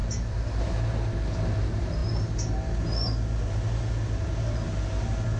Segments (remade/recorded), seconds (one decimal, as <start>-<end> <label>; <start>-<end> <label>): 0.0-5.4 recorded